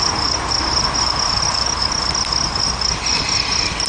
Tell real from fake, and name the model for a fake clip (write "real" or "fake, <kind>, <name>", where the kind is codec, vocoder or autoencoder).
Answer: real